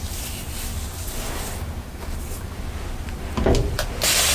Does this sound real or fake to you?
real